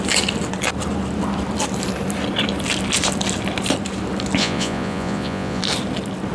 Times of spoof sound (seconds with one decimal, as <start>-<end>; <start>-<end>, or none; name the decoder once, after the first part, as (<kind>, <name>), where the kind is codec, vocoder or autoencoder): 4.4-5.6 (vocoder, Vocos)